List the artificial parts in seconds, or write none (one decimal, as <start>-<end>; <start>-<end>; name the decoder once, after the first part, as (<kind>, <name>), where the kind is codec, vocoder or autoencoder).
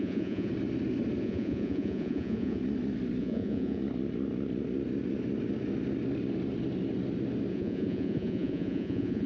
0.0-0.5 (vocoder, Vocos); 1.2-2.6; 3.2-3.8; 7.5-9.3